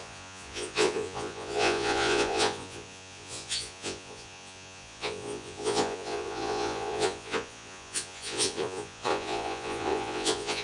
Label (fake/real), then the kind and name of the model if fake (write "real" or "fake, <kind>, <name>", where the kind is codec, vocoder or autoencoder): fake, vocoder, Vocos